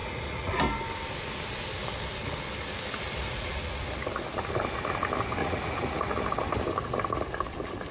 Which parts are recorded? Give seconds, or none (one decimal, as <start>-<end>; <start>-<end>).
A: 0.6-3.2; 3.9-5.4; 6.0-7.9